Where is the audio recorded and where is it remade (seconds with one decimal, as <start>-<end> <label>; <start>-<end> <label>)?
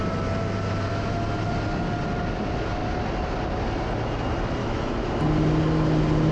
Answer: 0.0-4.6 recorded; 4.6-5.2 remade; 5.2-6.3 recorded